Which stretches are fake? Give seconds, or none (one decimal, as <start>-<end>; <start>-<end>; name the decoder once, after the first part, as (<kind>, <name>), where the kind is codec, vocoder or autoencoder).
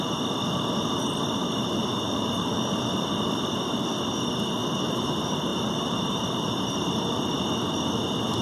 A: 1.4-3.4 (vocoder, BigVGAN v2); 4.6-5.1; 5.5-7.2